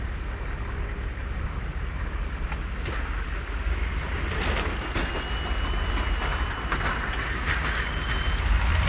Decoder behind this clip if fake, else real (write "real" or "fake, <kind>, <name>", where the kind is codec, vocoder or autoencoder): real